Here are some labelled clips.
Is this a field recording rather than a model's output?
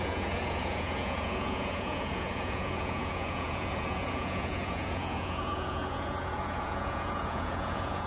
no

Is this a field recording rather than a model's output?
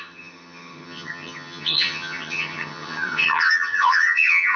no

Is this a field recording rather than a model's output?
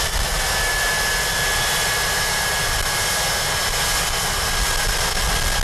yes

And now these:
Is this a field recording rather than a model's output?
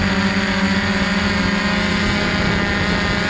yes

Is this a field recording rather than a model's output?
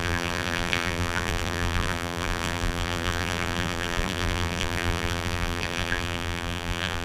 no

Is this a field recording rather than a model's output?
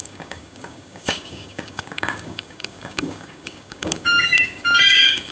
no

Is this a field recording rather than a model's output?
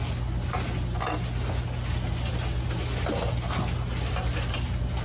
yes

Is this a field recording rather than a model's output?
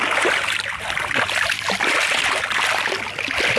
yes